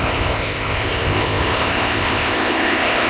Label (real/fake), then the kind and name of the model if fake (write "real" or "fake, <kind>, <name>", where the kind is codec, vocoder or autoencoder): fake, codec, ZipCodec